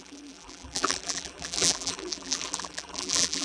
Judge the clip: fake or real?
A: fake